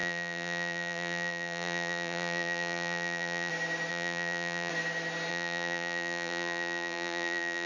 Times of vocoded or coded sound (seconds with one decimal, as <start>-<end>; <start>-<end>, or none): 0.0-3.5; 3.9-4.7; 5.3-7.7